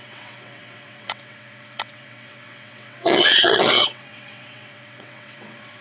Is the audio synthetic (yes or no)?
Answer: yes